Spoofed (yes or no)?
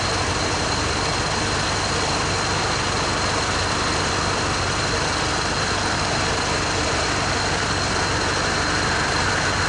no